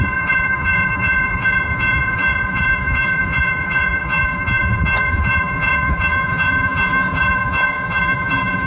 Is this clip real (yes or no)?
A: no